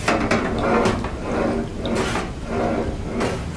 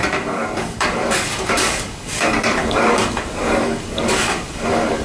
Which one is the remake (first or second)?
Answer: second